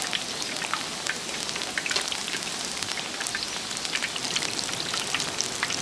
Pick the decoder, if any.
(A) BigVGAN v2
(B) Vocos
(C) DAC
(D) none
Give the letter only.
D